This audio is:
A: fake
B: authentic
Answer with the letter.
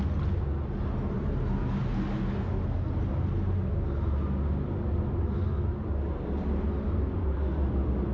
B